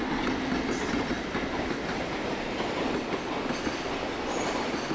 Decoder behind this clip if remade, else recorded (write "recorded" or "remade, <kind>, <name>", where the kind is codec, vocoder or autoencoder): recorded